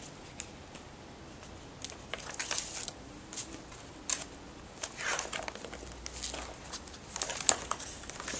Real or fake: real